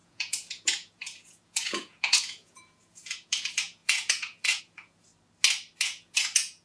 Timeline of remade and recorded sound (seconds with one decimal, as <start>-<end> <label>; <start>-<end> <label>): 0.0-5.1 remade; 5.1-5.8 recorded; 5.8-6.6 remade